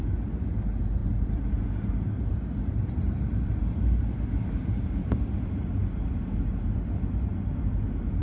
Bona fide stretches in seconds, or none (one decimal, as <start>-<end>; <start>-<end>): 0.0-1.0; 5.5-8.2